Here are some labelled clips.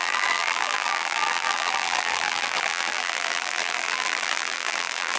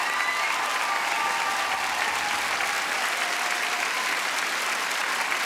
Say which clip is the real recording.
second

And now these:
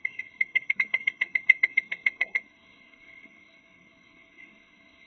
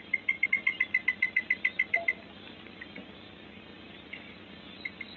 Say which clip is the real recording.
second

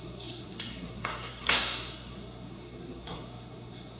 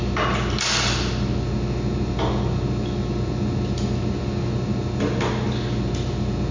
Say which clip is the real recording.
second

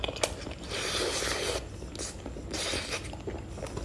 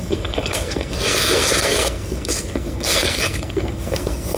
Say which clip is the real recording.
first